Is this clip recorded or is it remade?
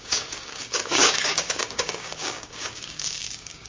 remade